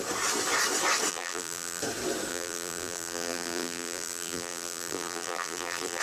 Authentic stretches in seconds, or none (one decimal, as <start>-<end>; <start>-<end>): 0.0-1.1; 1.8-2.3